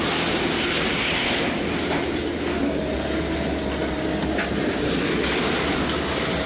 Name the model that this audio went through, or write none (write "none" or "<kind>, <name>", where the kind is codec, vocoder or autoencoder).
none